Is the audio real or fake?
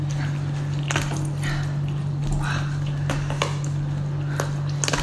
real